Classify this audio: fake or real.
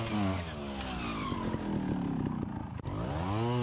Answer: real